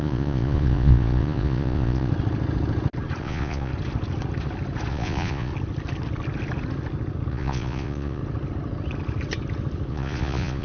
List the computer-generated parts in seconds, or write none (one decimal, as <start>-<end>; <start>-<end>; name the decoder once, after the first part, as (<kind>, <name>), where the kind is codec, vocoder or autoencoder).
0.0-2.1 (vocoder, Vocos); 3.2-3.7; 4.9-5.5; 7.3-8.2; 9.9-10.6